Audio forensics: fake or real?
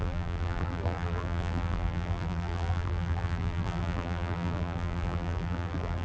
fake